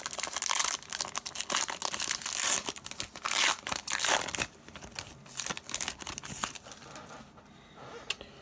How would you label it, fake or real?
real